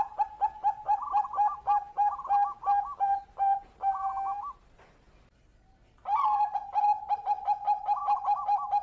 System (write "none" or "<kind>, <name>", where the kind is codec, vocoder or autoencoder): none